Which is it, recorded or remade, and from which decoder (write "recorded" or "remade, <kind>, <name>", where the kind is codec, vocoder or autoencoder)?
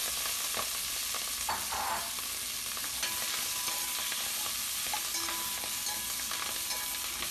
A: recorded